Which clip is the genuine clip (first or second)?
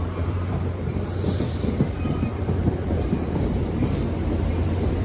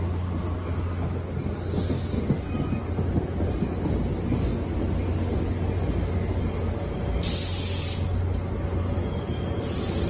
second